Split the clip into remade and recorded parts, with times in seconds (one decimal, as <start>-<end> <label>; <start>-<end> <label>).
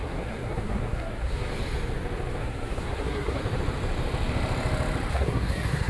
0.0-1.5 remade; 1.5-2.4 recorded; 2.4-3.4 remade; 3.4-5.1 recorded; 5.1-5.9 remade